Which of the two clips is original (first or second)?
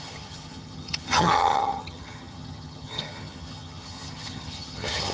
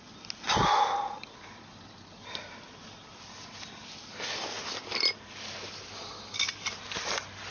second